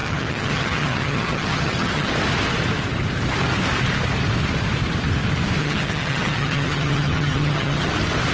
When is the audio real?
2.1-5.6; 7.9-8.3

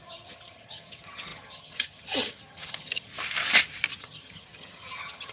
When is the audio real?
3.1-4.0

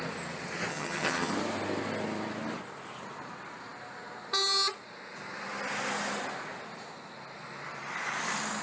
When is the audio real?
0.0-0.7; 1.3-8.6

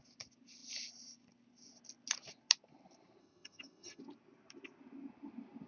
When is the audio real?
0.0-3.2; 4.0-5.7